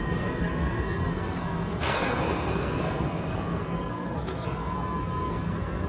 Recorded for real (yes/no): no